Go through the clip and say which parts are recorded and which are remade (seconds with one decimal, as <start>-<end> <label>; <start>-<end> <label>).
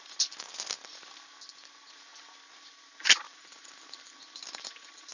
0.0-5.1 recorded